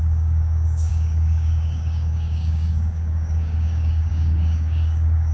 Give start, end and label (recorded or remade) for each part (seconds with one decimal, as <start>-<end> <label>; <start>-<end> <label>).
0.0-5.3 remade